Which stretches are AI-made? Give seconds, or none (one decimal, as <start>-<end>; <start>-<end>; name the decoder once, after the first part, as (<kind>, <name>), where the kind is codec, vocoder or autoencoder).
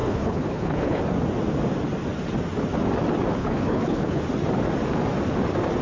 0.0-1.0 (codec, HILCodec); 3.4-4.2